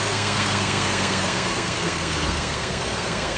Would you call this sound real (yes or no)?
no